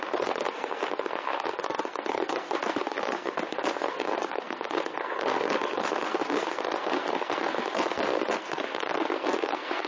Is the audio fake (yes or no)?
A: yes